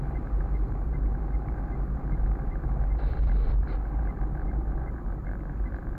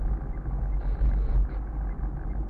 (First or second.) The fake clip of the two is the first